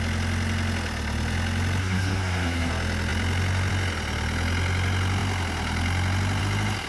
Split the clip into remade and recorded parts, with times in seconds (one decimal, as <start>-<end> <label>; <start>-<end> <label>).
0.0-1.8 recorded; 1.8-2.7 remade; 2.7-6.9 recorded